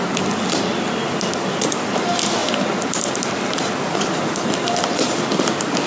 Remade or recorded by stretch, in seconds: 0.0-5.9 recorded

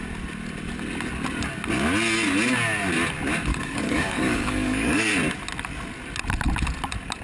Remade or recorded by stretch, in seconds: 0.0-3.5 recorded; 3.5-5.1 remade; 5.1-7.2 recorded

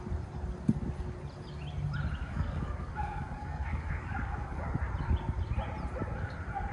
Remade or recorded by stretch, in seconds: 0.0-2.2 recorded; 2.2-4.7 remade; 4.7-6.7 recorded